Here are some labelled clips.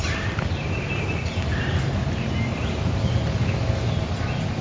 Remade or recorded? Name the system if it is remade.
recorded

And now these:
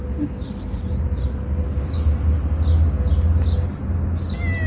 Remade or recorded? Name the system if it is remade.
recorded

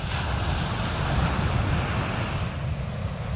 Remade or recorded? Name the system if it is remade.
remade, vocoder, BigVGAN v2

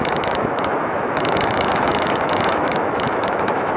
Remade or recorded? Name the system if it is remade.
remade, autoencoder, DAC-VAE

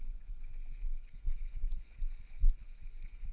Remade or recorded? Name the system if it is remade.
remade, vocoder, Vocos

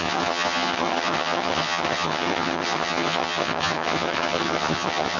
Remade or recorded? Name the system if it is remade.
remade, vocoder, HiFi-GAN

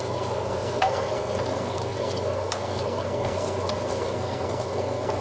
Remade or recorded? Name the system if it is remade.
remade, codec, SNAC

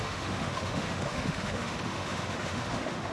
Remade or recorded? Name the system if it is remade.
remade, autoencoder, DAC-VAE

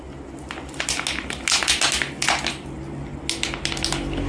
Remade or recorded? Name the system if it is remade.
recorded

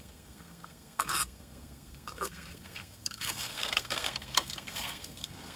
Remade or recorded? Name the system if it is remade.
remade, codec, SNAC